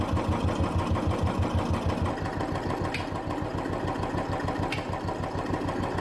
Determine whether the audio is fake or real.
real